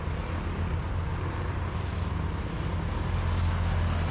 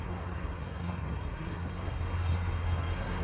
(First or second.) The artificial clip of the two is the second